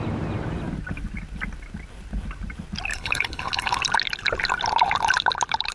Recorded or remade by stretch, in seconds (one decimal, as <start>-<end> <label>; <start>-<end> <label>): 0.0-2.9 recorded; 2.9-3.8 remade; 3.8-5.7 recorded